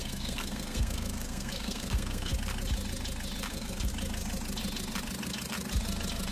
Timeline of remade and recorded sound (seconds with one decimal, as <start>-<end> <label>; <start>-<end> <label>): 0.0-2.3 remade; 2.3-3.5 recorded; 3.5-3.9 remade; 3.9-6.3 recorded